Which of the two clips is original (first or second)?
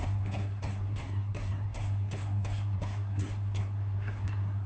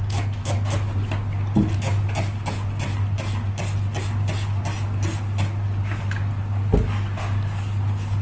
second